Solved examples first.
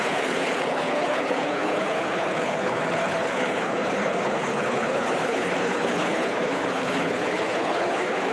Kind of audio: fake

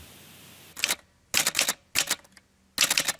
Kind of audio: real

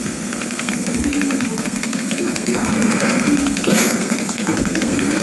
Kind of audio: fake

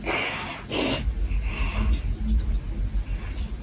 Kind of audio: real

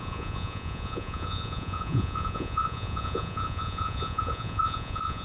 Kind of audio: fake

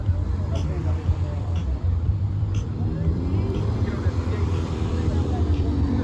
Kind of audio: fake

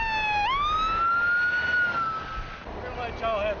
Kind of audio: real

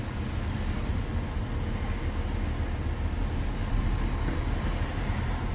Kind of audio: real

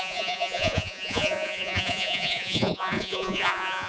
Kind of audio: fake